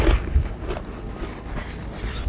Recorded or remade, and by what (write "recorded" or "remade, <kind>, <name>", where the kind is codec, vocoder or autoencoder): recorded